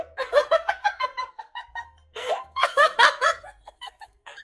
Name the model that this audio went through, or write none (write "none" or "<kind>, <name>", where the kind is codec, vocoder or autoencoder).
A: codec, SNAC